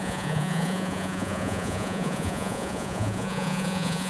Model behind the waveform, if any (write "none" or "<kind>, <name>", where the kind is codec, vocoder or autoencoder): vocoder, Vocos